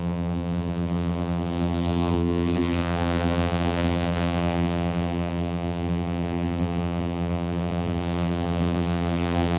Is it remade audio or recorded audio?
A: remade